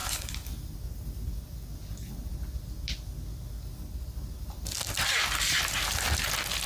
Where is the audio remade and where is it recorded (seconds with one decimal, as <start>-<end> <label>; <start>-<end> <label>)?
0.0-6.7 recorded